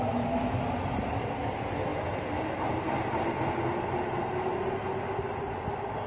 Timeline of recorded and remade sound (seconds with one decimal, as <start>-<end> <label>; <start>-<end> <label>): 0.0-6.1 recorded